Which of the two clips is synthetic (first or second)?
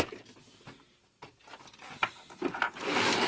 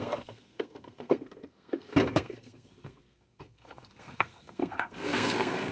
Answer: second